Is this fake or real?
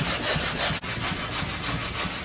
real